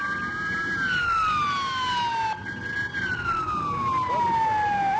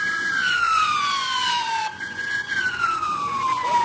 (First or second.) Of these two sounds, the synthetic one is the second